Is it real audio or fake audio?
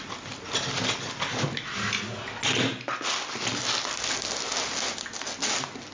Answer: real